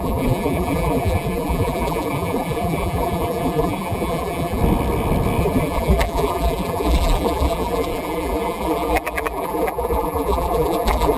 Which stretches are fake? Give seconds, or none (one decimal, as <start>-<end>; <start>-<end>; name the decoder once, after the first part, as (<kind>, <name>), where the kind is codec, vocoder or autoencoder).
0.0-4.6 (vocoder, BigVGAN v2); 5.4-11.2